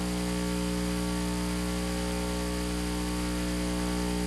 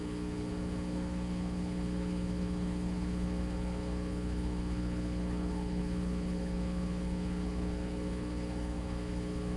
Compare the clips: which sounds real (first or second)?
first